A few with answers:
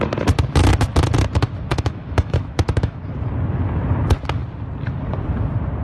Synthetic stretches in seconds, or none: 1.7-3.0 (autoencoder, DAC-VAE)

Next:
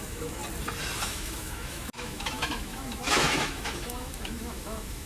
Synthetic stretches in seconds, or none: 0.0-0.4 (autoencoder, DAC-VAE); 1.0-5.1

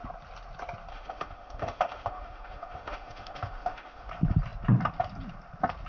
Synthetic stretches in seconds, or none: 0.9-4.1 (autoencoder, DAC-VAE)

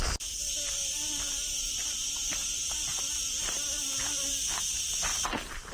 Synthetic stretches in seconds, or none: none